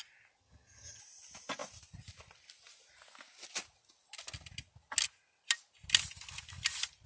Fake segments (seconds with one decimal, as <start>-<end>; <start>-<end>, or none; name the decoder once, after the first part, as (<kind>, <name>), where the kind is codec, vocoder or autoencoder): 0.4-1.0 (vocoder, HiFi-GAN)